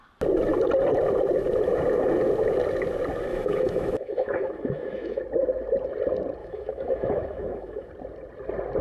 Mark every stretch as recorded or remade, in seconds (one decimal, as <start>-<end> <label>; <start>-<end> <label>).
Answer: 0.0-3.3 recorded; 3.3-5.2 remade; 5.2-6.4 recorded; 6.4-7.9 remade; 7.9-8.8 recorded